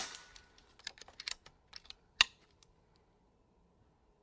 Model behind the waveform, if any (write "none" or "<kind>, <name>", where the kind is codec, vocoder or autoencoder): none